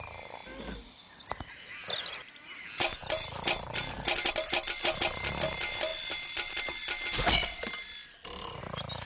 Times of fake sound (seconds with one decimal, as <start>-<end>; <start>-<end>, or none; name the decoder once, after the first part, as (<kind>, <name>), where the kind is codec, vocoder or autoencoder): none